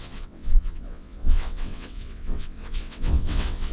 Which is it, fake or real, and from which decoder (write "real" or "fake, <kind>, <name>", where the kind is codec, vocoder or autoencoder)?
fake, vocoder, WaveNeXt